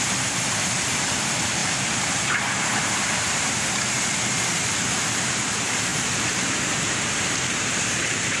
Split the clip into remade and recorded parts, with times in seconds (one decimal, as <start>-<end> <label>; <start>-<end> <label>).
0.0-8.4 remade